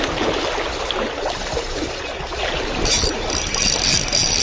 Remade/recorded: recorded